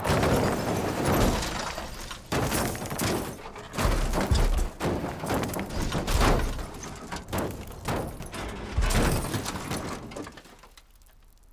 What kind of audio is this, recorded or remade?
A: recorded